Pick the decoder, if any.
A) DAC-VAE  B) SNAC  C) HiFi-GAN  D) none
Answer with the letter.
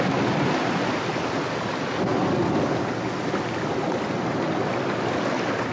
D